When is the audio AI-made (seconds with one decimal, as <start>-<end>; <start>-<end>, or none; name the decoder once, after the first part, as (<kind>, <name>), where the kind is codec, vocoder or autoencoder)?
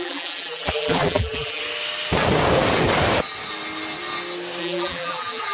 0.0-1.6 (vocoder, BigVGAN v2); 4.6-5.5